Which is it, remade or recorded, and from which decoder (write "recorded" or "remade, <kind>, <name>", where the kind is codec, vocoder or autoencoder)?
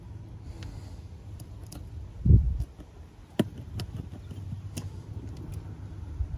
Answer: recorded